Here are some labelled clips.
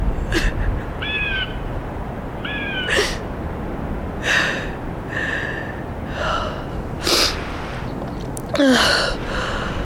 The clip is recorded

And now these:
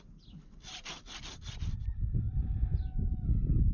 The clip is recorded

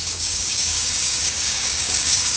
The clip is remade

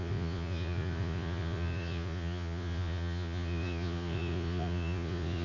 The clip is remade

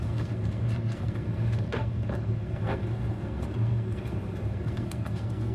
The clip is remade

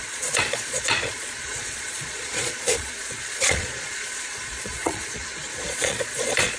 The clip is remade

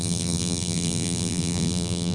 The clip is remade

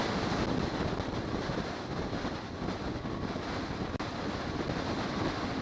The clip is recorded